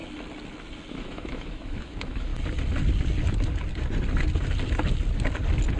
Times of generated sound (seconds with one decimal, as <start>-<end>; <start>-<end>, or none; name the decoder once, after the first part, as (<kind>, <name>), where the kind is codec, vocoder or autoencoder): 0.9-2.3 (autoencoder, DAC-VAE)